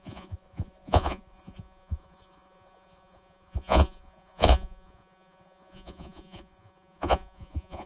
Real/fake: fake